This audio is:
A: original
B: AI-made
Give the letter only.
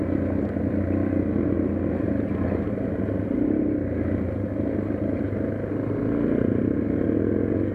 A